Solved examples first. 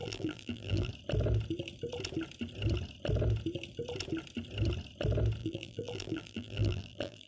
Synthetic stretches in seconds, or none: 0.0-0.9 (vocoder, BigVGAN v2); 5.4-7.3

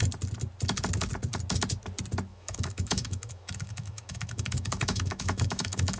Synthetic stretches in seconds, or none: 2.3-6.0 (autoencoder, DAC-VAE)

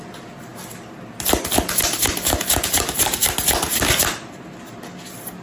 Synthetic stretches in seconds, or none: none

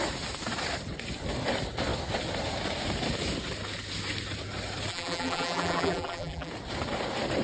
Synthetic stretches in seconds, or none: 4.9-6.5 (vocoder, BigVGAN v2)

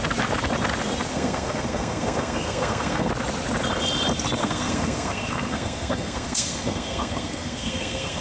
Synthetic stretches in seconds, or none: 1.1-3.1 (codec, SNAC); 4.4-8.2